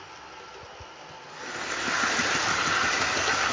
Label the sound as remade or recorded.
recorded